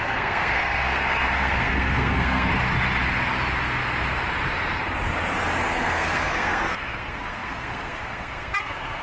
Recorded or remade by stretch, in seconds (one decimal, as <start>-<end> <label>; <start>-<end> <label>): 0.0-2.5 remade; 2.5-5.7 recorded; 5.7-9.0 remade